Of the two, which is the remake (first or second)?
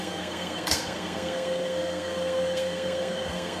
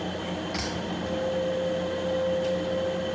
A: first